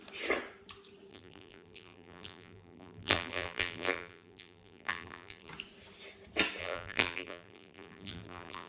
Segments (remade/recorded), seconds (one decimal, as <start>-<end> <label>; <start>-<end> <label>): 0.0-1.1 recorded; 1.1-5.5 remade; 5.5-6.6 recorded; 6.6-8.7 remade